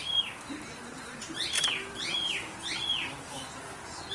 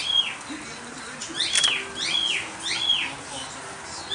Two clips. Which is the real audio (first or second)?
second